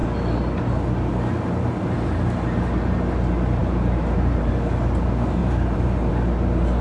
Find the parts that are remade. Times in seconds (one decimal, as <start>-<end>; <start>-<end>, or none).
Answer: 3.6-4.5; 5.4-6.1

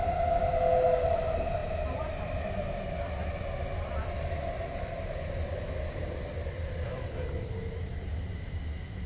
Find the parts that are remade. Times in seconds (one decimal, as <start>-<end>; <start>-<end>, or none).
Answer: 7.9-9.1

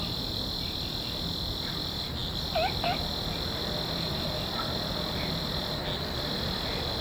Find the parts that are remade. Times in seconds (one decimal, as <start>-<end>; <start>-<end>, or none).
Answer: none

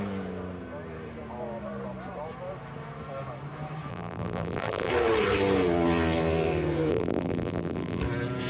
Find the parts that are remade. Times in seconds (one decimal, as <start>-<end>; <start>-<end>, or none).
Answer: 3.9-4.9; 6.9-8.0

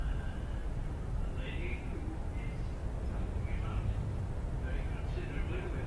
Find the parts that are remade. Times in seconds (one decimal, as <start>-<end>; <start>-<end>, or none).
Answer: 0.6-2.3; 2.8-5.9